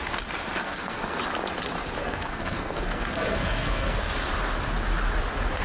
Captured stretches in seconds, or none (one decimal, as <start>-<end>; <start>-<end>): 0.0-0.6; 1.2-2.0; 4.1-5.6